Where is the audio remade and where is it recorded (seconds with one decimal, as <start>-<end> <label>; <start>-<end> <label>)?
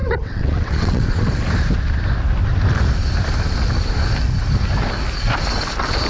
0.0-1.3 remade; 1.3-6.1 recorded